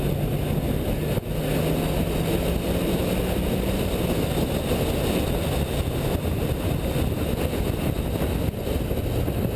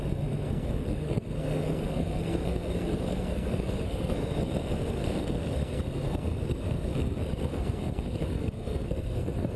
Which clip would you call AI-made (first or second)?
second